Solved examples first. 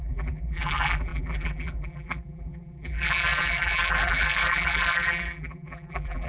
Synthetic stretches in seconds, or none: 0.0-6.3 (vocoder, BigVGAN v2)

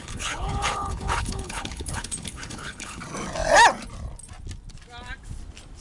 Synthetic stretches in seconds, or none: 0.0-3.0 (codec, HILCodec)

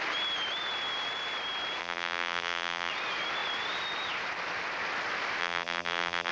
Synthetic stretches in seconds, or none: 1.8-2.9 (vocoder, BigVGAN v2); 5.4-6.3

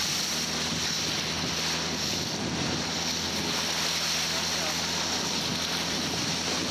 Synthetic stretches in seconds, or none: none